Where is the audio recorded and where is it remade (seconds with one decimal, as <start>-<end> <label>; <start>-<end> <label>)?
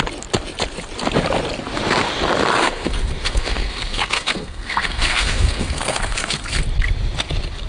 0.0-2.6 recorded; 2.6-6.6 remade; 6.6-7.7 recorded